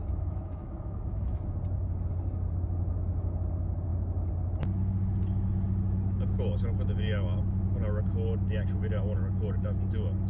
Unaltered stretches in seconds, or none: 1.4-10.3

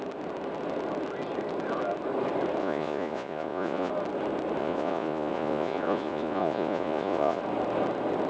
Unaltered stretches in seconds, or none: 0.0-2.6; 3.9-4.6; 7.4-8.3

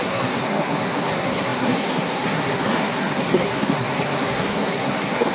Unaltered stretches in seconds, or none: none

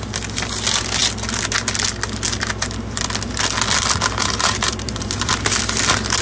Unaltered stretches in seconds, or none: 0.0-4.2; 5.3-6.2

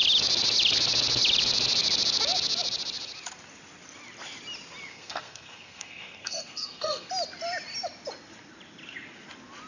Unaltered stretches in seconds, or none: 0.0-4.9; 7.1-9.7

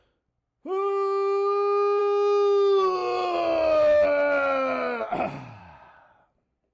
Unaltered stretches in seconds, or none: 0.0-6.7

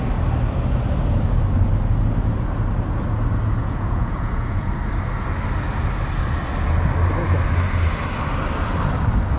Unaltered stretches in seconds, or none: 0.0-3.6; 4.7-9.4